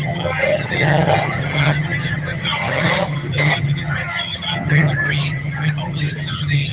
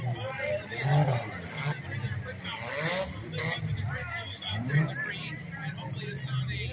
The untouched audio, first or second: second